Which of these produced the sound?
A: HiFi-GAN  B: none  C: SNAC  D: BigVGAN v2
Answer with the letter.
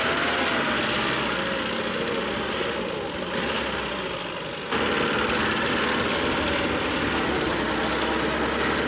B